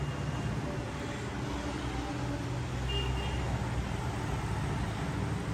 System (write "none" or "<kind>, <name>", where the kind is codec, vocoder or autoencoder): none